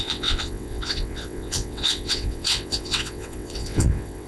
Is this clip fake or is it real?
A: fake